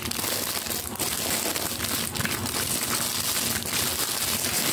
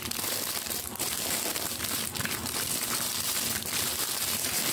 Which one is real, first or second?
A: first